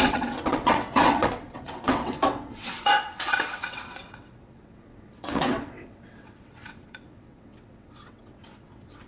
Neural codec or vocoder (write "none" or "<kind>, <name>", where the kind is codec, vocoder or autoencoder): vocoder, WaveNeXt